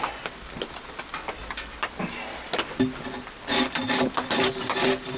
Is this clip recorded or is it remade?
recorded